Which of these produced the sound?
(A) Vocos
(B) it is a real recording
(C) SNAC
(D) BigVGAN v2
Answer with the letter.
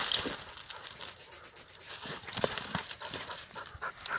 B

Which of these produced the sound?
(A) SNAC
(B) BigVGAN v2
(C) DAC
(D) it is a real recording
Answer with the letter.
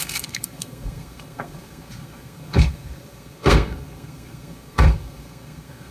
A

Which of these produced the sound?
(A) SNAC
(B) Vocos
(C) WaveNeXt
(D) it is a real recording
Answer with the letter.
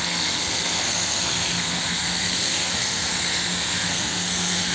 A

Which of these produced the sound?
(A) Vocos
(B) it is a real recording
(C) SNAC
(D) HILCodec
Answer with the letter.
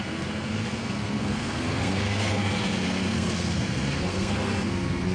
C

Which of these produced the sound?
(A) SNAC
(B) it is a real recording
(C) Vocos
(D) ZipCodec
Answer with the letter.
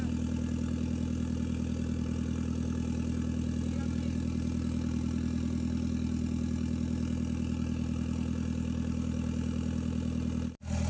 B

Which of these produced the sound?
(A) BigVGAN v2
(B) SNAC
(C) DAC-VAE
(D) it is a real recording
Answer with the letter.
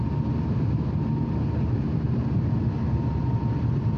D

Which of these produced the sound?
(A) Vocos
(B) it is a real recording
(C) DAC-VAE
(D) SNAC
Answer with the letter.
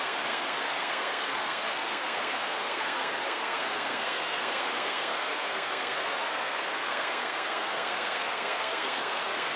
D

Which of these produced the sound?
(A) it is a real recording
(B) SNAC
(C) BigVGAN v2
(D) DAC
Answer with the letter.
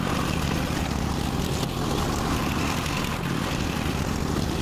A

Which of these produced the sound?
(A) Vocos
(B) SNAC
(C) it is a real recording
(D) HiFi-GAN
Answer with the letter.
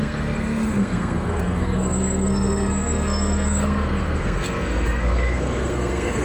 B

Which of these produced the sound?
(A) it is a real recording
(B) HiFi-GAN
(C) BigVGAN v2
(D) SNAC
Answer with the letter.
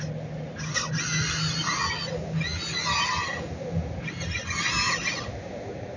A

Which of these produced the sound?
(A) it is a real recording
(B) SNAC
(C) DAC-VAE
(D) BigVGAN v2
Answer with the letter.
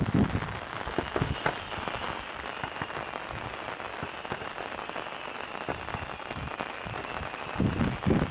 A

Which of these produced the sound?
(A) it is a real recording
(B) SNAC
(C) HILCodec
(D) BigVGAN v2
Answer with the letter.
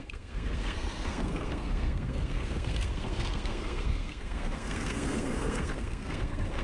B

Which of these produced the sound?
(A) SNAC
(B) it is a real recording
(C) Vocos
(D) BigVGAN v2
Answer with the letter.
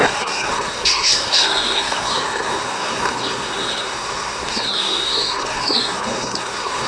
A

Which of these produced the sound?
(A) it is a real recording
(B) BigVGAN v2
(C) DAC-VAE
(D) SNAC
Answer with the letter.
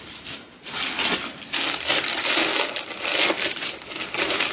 A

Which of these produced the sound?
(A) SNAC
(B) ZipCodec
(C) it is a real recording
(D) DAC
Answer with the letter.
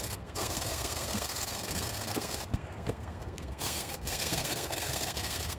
A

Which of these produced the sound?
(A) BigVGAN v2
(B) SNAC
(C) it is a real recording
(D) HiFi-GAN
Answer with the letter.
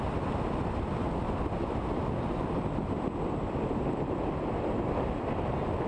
C